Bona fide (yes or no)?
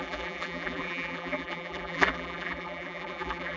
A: no